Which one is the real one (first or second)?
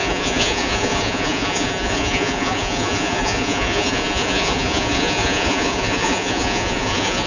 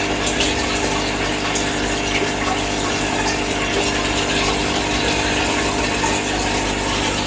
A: second